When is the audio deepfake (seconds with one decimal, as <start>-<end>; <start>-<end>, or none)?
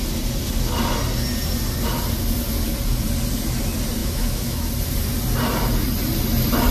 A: 4.0-4.7